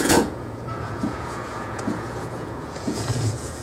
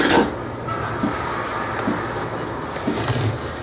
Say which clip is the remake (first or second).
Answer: first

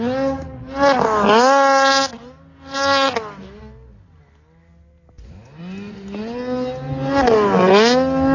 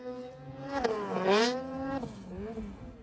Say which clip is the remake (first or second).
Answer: second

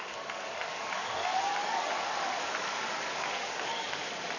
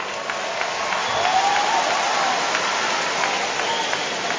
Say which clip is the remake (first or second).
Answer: first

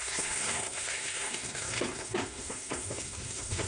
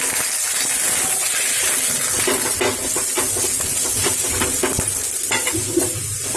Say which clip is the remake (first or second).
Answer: first